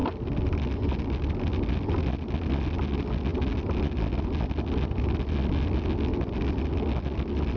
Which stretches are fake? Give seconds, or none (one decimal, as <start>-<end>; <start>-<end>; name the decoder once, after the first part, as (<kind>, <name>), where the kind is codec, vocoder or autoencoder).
none